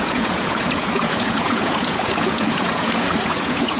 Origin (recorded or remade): remade